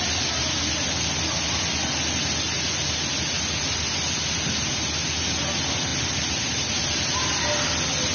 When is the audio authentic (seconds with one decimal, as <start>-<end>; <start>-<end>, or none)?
0.0-8.1